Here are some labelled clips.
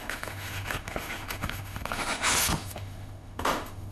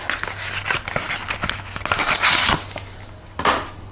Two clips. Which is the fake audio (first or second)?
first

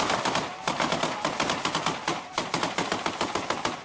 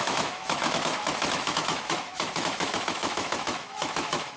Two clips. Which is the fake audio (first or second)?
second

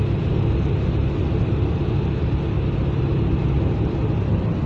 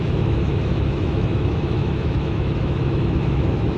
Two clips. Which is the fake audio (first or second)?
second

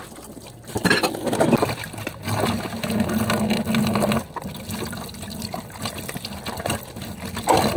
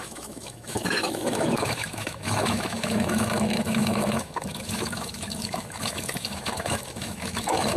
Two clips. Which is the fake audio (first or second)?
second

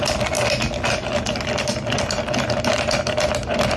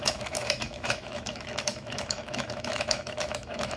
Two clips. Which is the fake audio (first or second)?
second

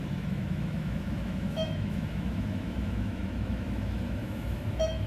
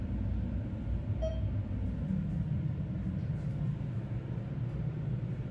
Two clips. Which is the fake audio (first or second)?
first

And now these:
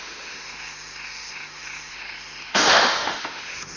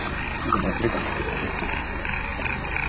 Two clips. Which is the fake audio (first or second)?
first